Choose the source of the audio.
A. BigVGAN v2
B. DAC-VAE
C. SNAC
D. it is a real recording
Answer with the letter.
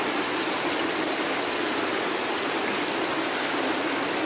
D